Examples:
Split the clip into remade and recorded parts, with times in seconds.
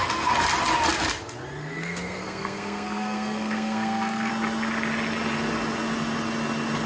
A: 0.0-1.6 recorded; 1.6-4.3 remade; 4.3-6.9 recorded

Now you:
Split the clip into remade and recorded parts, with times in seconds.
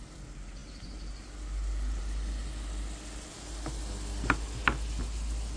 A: 0.0-5.6 recorded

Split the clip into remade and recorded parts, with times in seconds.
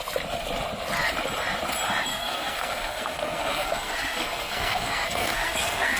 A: 0.0-2.1 recorded; 2.1-6.0 remade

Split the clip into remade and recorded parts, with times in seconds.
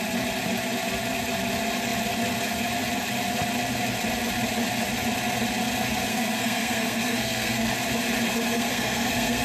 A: 0.0-6.1 recorded; 6.1-7.7 remade; 7.7-8.3 recorded; 8.3-9.4 remade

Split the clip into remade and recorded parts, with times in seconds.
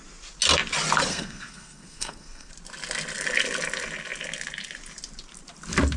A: 0.0-1.1 recorded; 1.1-2.5 remade; 2.5-6.0 recorded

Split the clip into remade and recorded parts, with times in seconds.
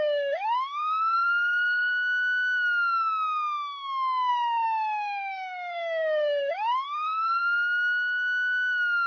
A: 0.0-1.9 remade; 1.9-4.3 recorded; 4.3-7.4 remade; 7.4-9.1 recorded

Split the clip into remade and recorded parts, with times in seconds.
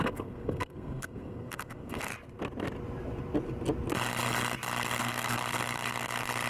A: 0.0-2.1 remade; 2.1-5.0 recorded; 5.0-5.4 remade; 5.4-6.5 recorded